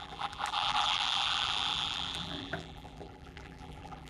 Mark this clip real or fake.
fake